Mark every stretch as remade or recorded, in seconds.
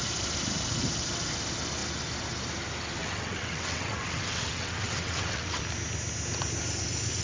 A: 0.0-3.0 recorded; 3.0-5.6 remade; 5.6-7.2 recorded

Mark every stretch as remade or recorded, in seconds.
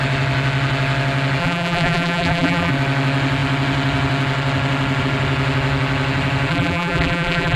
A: 0.0-1.4 recorded; 1.4-2.7 remade; 2.7-6.5 recorded; 6.5-7.6 remade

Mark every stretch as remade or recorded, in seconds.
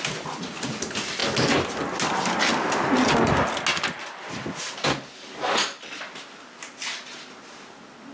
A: 0.0-8.1 recorded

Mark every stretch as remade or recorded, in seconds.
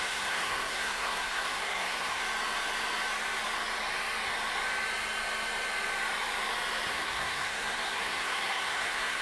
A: 0.0-2.2 remade; 2.2-6.9 recorded; 6.9-9.2 remade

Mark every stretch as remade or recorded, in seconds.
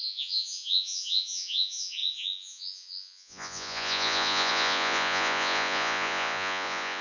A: 0.0-7.0 remade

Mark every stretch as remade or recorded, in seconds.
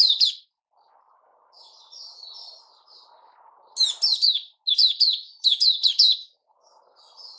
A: 0.0-7.4 recorded